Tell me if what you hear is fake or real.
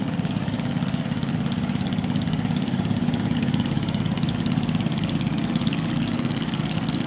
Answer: fake